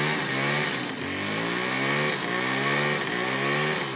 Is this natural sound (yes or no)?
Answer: yes